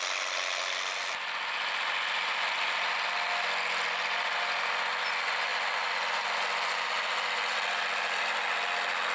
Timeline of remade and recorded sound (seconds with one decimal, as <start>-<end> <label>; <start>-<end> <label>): 0.0-5.5 recorded; 5.5-8.2 remade; 8.2-9.1 recorded

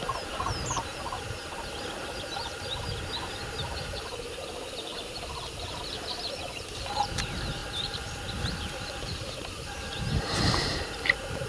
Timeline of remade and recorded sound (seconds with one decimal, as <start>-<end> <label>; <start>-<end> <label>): 0.0-11.5 remade

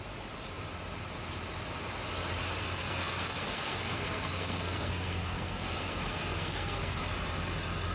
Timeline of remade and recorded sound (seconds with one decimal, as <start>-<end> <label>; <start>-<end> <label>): 0.0-2.6 recorded; 2.6-7.0 remade; 7.0-7.9 recorded

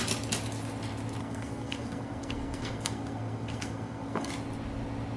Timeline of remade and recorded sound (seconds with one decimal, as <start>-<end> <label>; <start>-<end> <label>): 0.0-1.2 recorded; 1.2-4.3 remade; 4.3-5.2 recorded

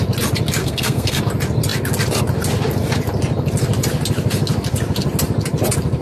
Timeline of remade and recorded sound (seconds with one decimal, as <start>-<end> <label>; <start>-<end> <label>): 0.0-0.6 recorded; 0.6-1.2 remade; 1.2-6.0 recorded